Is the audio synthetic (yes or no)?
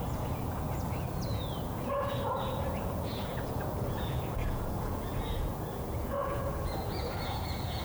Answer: yes